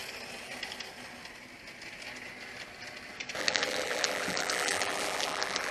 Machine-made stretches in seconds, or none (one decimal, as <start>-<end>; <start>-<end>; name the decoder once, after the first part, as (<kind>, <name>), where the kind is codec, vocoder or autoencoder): 3.4-5.7 (vocoder, BigVGAN v2)